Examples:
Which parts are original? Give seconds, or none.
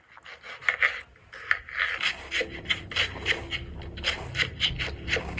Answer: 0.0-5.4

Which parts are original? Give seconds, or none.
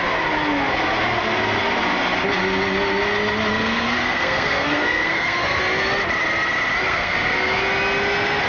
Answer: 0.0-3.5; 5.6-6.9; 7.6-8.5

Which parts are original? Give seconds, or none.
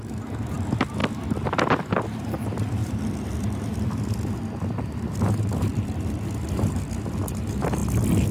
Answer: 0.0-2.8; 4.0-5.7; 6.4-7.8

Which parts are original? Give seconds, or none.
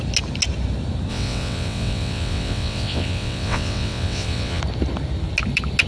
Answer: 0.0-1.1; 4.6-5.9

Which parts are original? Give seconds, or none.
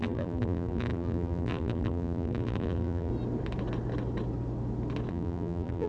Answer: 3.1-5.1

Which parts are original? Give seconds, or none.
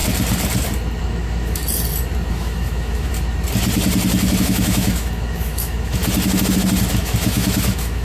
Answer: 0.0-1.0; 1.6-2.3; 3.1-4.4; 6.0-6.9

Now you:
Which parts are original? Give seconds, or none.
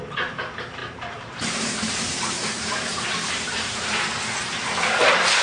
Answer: 0.0-0.8; 4.0-5.4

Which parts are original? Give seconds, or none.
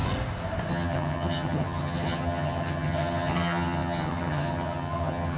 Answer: 0.0-0.7